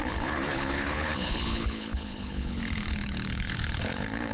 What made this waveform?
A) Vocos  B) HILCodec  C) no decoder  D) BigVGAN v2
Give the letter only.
B